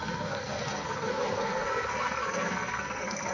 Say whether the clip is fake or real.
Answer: fake